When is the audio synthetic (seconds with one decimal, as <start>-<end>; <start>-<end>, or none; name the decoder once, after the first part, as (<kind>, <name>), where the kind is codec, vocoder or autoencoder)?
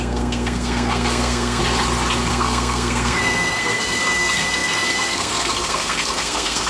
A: 0.0-1.6 (codec, SNAC); 2.3-6.7